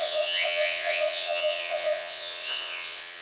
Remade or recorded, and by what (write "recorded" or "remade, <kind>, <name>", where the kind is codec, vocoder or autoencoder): remade, vocoder, WaveNeXt